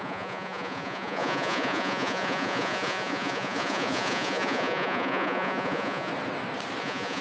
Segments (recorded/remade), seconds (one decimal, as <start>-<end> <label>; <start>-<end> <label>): 0.0-6.1 remade; 6.1-6.8 recorded; 6.8-7.2 remade